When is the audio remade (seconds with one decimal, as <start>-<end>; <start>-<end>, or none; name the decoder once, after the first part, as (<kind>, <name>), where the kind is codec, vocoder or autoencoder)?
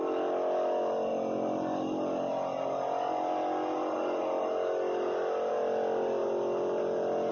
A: none